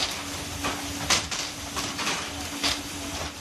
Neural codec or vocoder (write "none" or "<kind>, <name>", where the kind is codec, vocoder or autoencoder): vocoder, BigVGAN v2